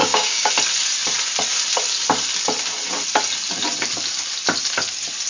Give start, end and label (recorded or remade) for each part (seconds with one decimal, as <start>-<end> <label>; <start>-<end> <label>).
0.0-0.5 remade; 0.5-5.3 recorded